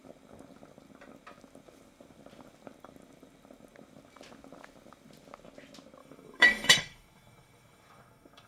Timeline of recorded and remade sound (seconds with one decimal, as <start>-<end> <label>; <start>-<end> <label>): 0.0-6.0 recorded; 6.0-8.5 remade